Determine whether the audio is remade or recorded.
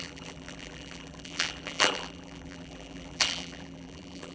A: remade